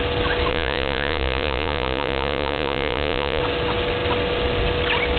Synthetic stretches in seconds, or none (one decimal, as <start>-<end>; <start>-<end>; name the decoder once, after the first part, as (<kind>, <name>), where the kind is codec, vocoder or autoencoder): 0.5-3.4 (vocoder, Vocos)